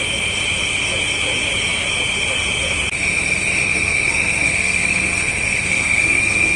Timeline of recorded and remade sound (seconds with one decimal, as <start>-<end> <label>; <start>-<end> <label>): 0.0-3.6 recorded; 3.6-6.6 remade